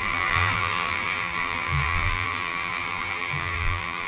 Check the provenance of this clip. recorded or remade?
remade